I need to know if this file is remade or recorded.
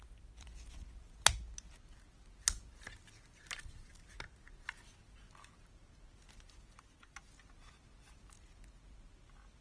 recorded